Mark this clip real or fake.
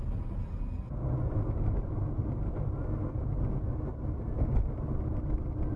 real